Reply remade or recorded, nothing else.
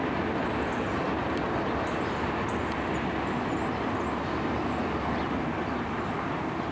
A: recorded